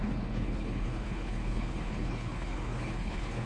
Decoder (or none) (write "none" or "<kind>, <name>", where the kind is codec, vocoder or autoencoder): codec, HILCodec